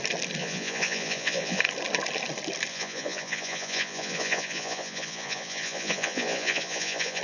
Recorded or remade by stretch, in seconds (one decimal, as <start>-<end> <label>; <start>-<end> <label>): 0.0-0.4 recorded; 0.4-1.6 remade; 1.6-2.7 recorded; 2.7-7.2 remade